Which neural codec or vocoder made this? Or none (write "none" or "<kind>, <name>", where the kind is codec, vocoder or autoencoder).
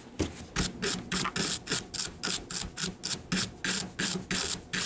none